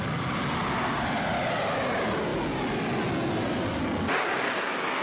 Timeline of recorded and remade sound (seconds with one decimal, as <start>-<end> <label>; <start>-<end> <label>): 0.0-5.0 recorded